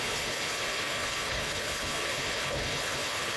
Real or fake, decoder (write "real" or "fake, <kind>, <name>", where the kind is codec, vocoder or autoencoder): fake, codec, HILCodec